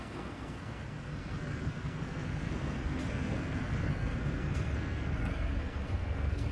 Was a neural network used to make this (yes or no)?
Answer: yes